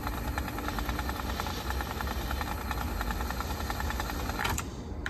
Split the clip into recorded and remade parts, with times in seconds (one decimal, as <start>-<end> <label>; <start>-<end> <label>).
0.0-4.4 recorded; 4.4-5.1 remade